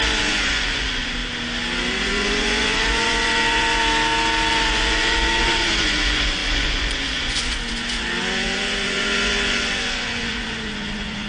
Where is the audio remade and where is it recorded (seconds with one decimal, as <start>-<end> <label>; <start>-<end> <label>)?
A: 0.0-1.2 remade; 1.2-1.9 recorded; 1.9-3.8 remade; 3.8-4.5 recorded; 4.5-11.3 remade